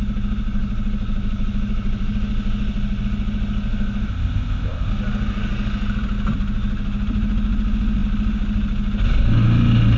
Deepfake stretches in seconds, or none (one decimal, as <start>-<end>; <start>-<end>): 4.1-4.9